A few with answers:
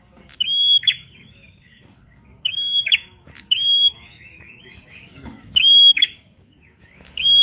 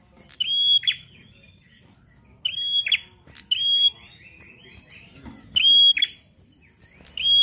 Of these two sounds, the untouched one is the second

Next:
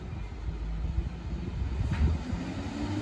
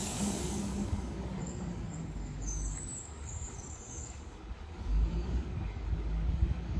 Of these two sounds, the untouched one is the first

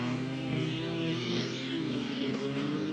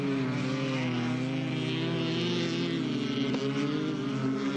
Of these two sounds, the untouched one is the second